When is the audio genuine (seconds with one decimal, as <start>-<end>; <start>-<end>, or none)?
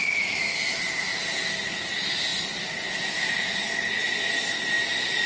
0.0-5.3